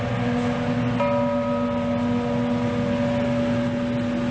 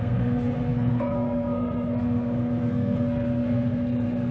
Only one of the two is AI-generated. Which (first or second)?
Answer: second